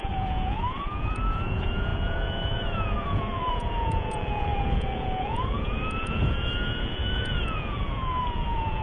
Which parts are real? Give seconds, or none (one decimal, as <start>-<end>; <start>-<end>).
none